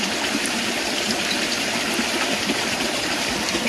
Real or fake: fake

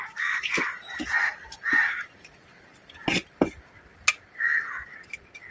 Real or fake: real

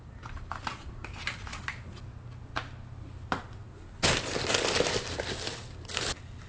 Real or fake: real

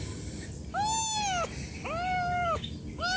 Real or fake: real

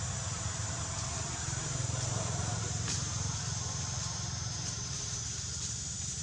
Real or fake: fake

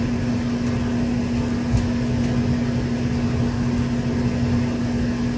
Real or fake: real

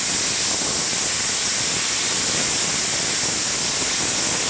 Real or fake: real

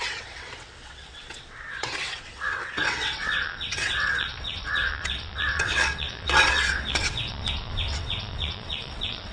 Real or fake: fake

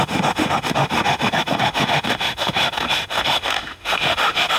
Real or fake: fake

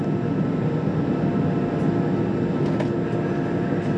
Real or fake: real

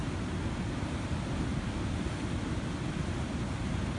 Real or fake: real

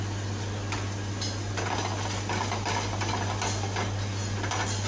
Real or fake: real